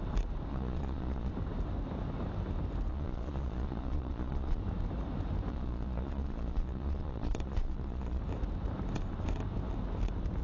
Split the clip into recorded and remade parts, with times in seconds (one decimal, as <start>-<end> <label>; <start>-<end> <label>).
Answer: 0.0-0.5 recorded; 0.5-1.3 remade; 1.3-2.9 recorded; 2.9-4.6 remade; 4.6-5.5 recorded; 5.5-8.2 remade; 8.2-10.4 recorded